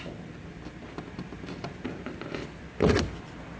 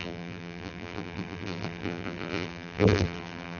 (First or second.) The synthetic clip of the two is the second